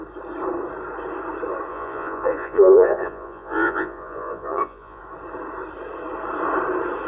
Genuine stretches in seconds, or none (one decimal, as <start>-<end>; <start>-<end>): 0.0-1.7; 5.0-7.1